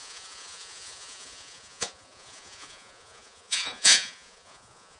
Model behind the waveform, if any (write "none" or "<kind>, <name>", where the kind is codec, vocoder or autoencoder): vocoder, Vocos